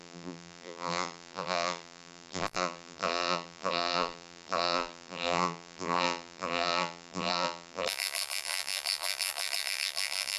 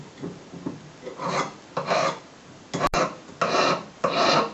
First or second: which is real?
second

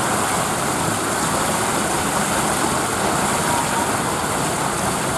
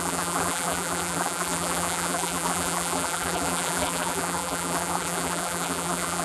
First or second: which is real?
first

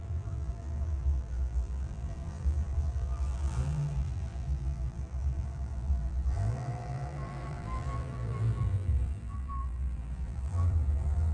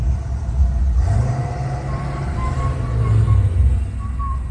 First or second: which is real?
second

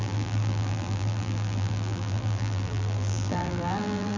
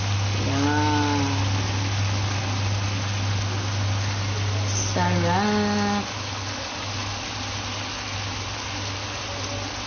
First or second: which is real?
second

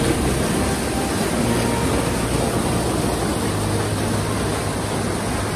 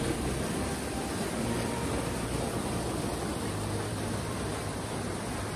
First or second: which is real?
first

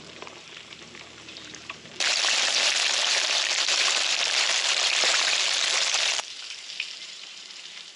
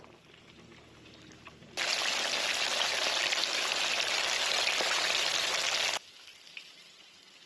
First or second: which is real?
second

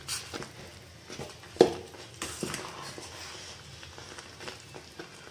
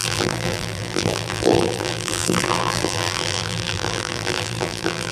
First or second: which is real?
first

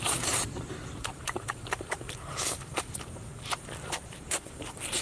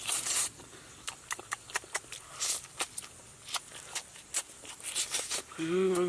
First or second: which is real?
second